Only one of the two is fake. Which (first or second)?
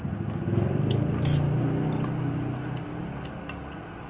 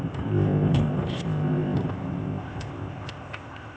second